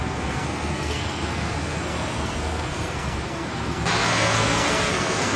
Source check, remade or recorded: remade